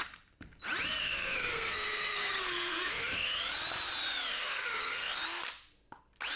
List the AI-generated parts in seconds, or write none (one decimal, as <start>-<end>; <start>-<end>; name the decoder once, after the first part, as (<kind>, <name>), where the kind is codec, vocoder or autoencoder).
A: 1.0-3.4 (codec, SNAC); 4.3-5.2